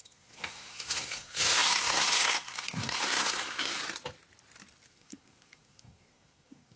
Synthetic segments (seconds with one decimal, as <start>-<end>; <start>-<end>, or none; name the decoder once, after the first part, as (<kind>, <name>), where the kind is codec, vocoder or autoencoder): 0.0-3.7 (codec, SNAC); 4.9-6.8